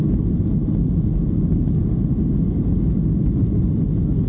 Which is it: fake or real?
real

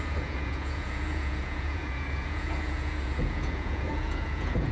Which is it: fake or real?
fake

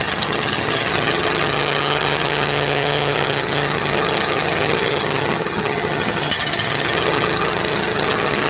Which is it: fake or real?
fake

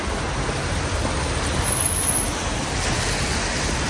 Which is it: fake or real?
real